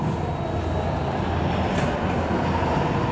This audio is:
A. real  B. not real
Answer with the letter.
A